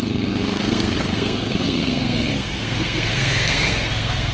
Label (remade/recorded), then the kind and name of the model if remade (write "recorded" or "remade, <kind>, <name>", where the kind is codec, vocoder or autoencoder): remade, codec, SNAC